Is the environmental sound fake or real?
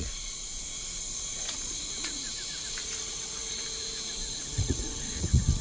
fake